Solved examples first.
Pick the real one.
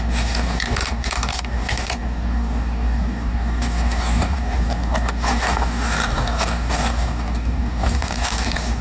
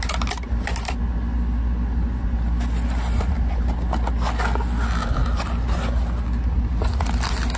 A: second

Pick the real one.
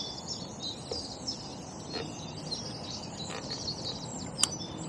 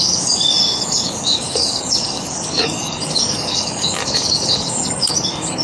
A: first